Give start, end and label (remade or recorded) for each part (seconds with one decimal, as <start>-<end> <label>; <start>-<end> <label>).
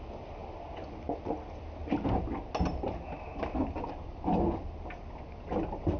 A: 0.0-6.0 recorded